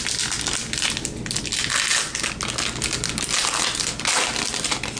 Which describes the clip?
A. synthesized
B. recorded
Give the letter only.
B